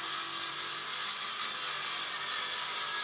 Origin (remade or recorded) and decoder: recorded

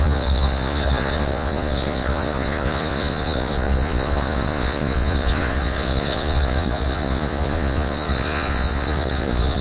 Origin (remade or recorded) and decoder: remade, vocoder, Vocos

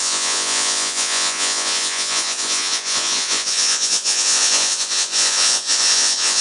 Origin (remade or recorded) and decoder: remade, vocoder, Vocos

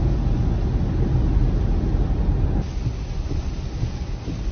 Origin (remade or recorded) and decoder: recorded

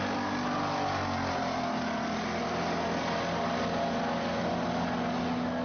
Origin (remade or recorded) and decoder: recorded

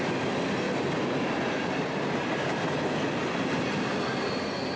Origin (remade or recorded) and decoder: recorded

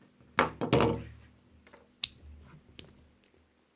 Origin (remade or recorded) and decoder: recorded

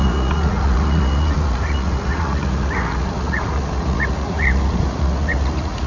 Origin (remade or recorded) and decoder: remade, vocoder, Vocos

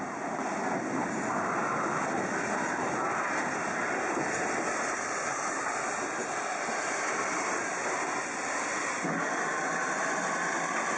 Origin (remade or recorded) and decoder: recorded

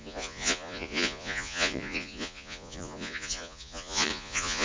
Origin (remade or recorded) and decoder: remade, vocoder, Vocos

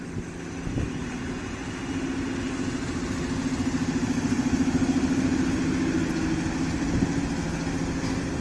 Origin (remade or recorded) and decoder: recorded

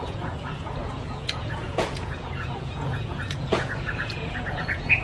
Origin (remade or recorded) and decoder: remade, vocoder, Vocos